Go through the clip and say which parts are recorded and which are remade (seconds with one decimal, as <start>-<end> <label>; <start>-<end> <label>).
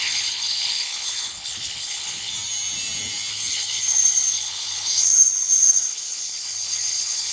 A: 0.0-2.3 remade; 2.3-3.3 recorded; 3.3-7.3 remade